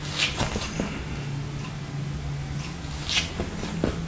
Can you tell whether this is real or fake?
real